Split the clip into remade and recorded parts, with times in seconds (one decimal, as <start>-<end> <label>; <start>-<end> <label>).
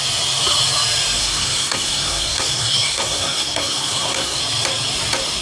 0.0-1.2 recorded; 1.2-4.4 remade; 4.4-5.4 recorded